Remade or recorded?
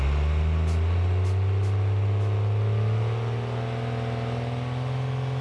recorded